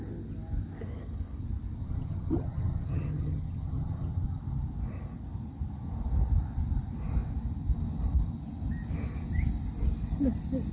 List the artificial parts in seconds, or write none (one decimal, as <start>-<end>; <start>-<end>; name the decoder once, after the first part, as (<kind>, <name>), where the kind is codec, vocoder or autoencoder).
1.8-4.4 (vocoder, HiFi-GAN)